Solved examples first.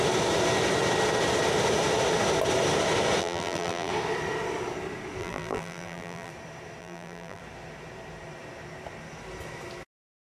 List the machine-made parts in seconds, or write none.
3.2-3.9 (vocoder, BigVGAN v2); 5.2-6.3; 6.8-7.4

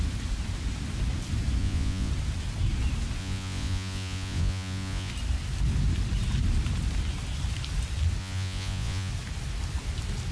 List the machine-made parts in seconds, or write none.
1.6-2.1 (vocoder, Vocos); 3.2-5.1; 8.2-9.1

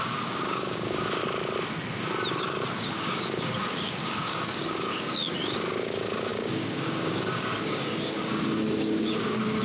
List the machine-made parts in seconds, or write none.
0.0-1.2 (codec, DAC); 2.4-9.6

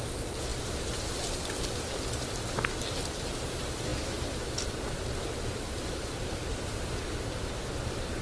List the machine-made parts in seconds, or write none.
none

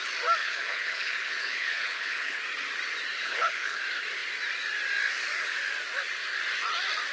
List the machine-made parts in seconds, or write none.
0.4-2.4 (codec, HILCodec); 3.2-3.8

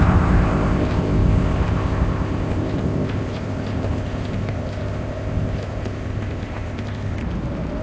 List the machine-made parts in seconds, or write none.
0.0-7.2 (codec, ZipCodec)

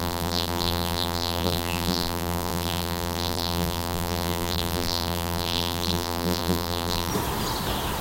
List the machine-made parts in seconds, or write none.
0.0-7.1 (vocoder, BigVGAN v2)